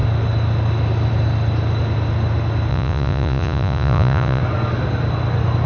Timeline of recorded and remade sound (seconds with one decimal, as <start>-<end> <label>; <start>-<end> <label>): 0.0-2.7 recorded; 2.7-4.4 remade; 4.4-5.7 recorded